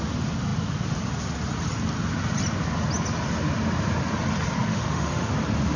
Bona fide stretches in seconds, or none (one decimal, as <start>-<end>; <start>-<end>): 0.0-4.7; 5.3-5.8